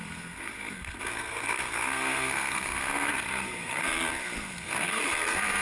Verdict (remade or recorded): remade